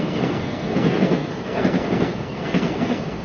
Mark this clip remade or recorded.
remade